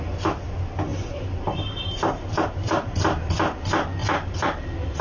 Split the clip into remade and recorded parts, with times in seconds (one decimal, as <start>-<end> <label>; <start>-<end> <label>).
0.0-0.9 recorded; 0.9-2.9 remade; 2.9-4.0 recorded; 4.0-5.0 remade